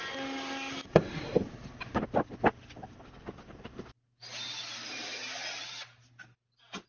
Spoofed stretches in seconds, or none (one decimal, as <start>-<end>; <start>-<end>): none